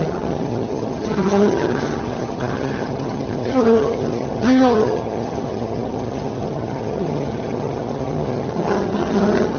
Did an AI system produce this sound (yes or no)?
yes